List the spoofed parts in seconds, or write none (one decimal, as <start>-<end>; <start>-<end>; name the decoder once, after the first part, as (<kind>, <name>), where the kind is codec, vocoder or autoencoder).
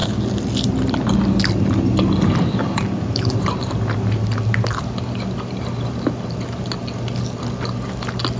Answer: none